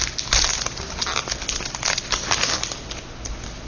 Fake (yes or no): no